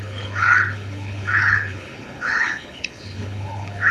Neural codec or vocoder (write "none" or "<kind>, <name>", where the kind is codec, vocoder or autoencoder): codec, HILCodec